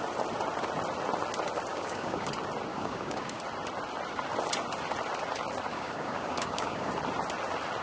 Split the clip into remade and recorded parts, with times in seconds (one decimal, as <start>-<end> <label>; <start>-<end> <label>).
0.0-1.7 recorded; 1.7-2.3 remade; 2.3-2.7 recorded; 2.7-3.4 remade; 3.4-5.7 recorded; 5.7-6.9 remade; 6.9-7.8 recorded